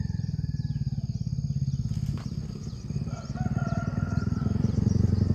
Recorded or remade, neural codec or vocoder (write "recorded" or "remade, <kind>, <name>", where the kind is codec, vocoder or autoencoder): recorded